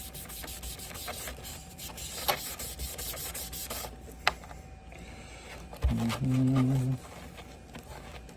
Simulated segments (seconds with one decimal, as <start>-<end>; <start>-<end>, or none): none